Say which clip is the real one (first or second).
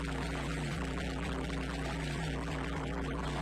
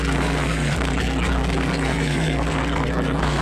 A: first